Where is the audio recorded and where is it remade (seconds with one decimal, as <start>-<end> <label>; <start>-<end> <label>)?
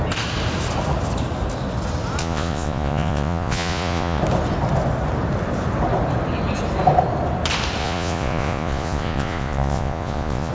0.0-2.2 recorded; 2.2-4.2 remade; 4.2-7.8 recorded; 7.8-10.5 remade